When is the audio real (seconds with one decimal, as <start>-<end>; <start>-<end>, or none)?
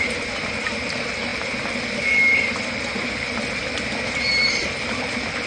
0.0-5.5